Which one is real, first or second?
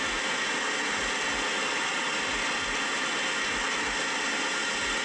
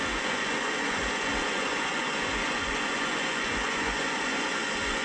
first